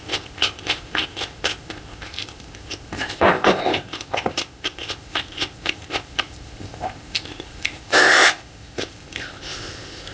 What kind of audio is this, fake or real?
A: fake